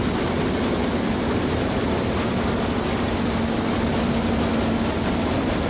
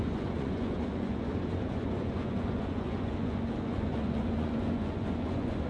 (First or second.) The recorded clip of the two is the first